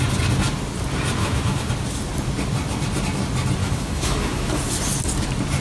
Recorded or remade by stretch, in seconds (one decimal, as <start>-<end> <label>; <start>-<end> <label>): 0.0-1.2 recorded; 1.2-1.7 remade; 1.7-3.6 recorded; 3.6-4.6 remade; 4.6-5.6 recorded